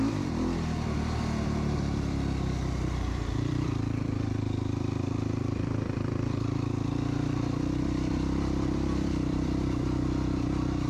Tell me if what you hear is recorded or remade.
remade